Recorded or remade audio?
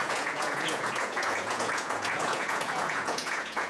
remade